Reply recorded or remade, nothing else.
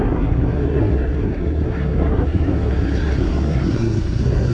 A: remade